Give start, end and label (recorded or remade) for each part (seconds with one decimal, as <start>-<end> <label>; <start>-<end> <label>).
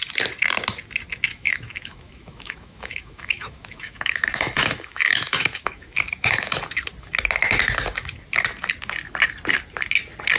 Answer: 0.0-1.3 recorded; 1.3-6.6 remade; 6.6-10.4 recorded